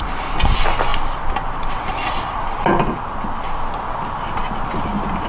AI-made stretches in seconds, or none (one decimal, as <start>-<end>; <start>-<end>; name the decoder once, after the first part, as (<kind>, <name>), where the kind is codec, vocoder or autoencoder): none